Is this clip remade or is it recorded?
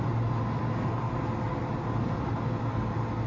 recorded